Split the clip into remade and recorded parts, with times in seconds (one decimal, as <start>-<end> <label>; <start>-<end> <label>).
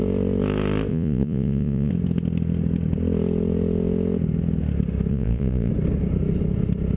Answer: 0.0-0.9 recorded; 0.9-1.9 remade; 1.9-5.1 recorded; 5.1-5.7 remade; 5.7-7.0 recorded